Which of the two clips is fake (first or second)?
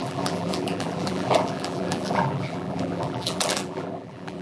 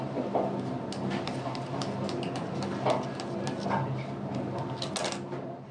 first